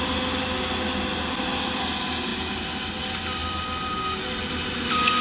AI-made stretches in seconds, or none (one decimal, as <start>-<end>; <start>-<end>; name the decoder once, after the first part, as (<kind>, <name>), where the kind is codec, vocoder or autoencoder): none